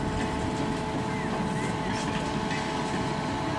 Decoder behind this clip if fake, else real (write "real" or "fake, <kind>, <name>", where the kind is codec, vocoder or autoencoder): real